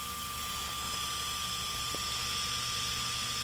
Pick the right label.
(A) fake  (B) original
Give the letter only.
B